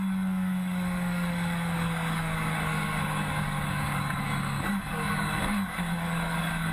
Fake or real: fake